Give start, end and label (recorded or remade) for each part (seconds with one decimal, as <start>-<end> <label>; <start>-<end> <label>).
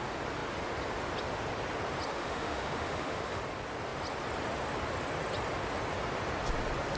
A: 0.0-2.1 recorded; 2.1-3.4 remade; 3.4-7.0 recorded